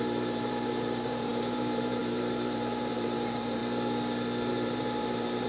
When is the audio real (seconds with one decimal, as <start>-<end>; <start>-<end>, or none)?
3.6-4.5